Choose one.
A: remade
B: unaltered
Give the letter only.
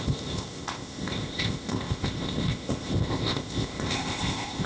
A